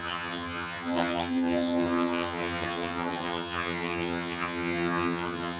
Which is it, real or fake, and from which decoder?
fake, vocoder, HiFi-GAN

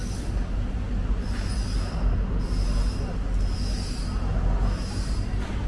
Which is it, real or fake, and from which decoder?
real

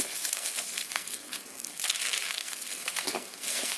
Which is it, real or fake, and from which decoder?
fake, codec, SNAC